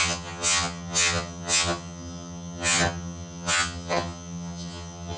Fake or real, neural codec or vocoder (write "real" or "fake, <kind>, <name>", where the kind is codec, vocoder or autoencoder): fake, vocoder, HiFi-GAN